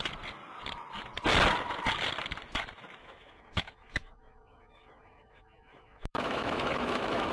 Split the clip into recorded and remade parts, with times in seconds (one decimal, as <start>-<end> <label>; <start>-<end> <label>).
0.0-3.0 recorded; 3.0-7.3 remade